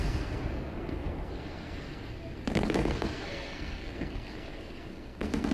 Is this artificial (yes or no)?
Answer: yes